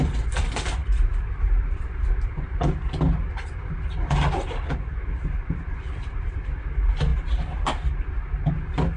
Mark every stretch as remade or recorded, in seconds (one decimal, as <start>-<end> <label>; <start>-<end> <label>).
0.0-9.0 remade